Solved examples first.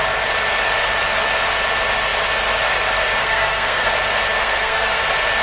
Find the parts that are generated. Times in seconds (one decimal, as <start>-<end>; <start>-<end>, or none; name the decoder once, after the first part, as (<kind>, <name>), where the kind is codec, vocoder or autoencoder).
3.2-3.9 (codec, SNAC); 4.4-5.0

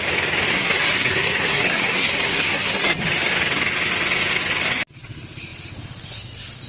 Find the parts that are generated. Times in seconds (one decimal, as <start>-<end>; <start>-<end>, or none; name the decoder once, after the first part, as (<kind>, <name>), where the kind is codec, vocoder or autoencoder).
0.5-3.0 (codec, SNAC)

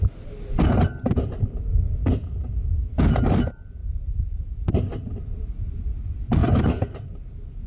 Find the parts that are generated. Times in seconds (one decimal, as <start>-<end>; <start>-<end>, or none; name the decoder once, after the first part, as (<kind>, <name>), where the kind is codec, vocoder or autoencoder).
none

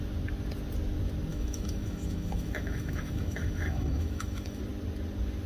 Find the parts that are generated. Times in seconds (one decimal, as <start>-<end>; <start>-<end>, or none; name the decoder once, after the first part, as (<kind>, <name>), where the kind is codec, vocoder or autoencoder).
1.3-4.6 (autoencoder, DAC-VAE)

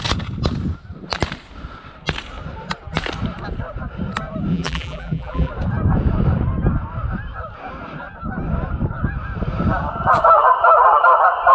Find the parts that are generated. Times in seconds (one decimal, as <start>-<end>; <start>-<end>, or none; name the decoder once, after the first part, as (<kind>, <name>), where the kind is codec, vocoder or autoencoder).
4.5-5.5 (vocoder, BigVGAN v2)